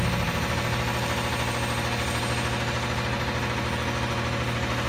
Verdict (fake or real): real